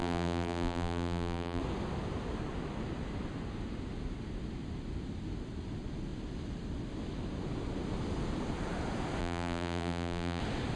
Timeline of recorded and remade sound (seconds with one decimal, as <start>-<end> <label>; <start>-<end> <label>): 0.0-1.6 remade; 1.6-9.2 recorded; 9.2-10.4 remade; 10.4-10.8 recorded